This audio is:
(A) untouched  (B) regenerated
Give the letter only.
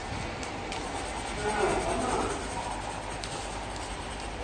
A